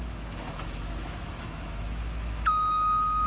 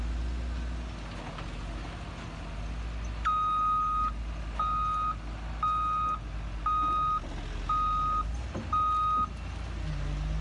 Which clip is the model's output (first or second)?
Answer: first